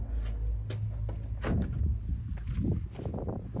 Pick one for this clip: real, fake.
real